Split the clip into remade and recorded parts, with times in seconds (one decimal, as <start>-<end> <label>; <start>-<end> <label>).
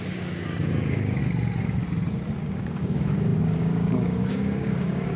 0.0-1.2 remade; 1.2-2.4 recorded; 2.4-5.2 remade